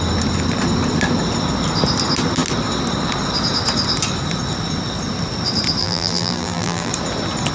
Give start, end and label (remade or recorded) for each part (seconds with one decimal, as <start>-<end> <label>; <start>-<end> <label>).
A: 0.0-5.8 recorded; 5.8-6.9 remade; 6.9-7.5 recorded